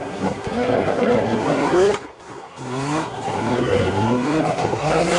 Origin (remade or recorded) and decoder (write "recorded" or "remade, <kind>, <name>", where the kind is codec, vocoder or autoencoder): remade, codec, SNAC